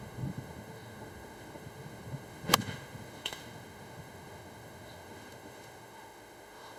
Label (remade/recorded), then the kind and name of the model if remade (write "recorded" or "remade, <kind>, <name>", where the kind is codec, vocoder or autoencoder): remade, autoencoder, DAC-VAE